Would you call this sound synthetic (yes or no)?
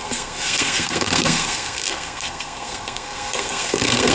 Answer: yes